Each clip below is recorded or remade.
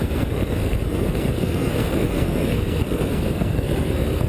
remade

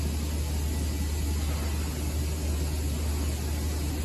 recorded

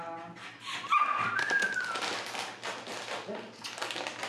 recorded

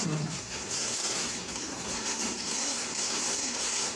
remade